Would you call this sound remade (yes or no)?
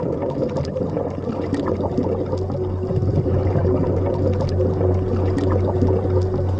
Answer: no